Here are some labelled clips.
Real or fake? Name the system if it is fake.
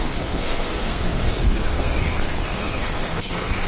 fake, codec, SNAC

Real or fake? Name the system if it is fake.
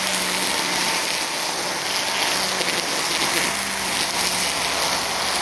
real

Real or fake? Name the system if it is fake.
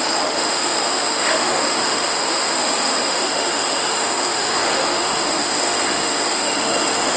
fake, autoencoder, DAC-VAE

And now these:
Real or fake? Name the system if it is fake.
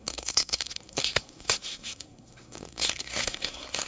fake, codec, SNAC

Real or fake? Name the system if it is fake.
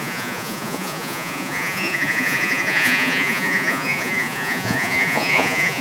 fake, vocoder, Vocos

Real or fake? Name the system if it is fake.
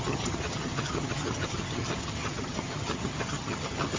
fake, vocoder, HiFi-GAN